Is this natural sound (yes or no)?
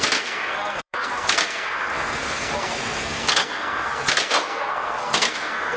no